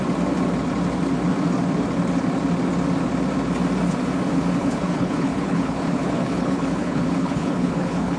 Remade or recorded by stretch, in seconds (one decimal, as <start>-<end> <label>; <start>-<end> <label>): 0.0-4.6 recorded; 4.6-8.2 remade